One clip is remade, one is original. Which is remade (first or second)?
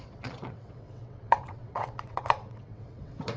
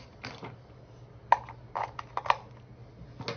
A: first